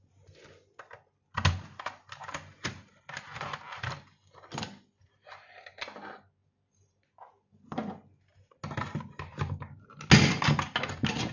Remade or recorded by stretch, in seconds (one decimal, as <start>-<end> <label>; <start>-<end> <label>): 0.0-2.5 recorded; 2.5-3.6 remade; 3.6-11.3 recorded